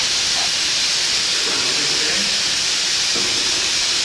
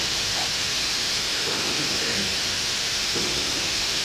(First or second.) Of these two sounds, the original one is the first